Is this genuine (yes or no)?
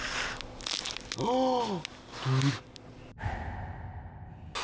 yes